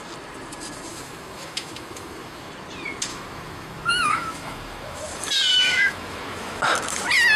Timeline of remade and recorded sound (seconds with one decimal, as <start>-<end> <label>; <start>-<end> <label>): 0.0-0.9 recorded; 0.9-2.5 remade; 2.5-3.1 recorded; 3.1-5.0 remade; 5.0-5.5 recorded; 5.5-6.6 remade; 6.6-7.4 recorded